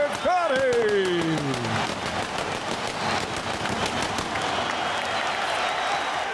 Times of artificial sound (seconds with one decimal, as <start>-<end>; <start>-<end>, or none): none